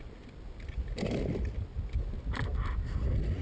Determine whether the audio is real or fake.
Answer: real